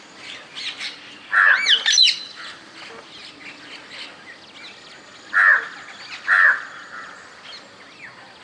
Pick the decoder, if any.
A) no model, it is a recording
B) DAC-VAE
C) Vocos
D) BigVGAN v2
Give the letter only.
A